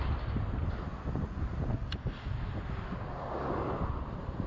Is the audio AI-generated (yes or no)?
no